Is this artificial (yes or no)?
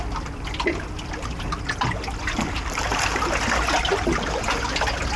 no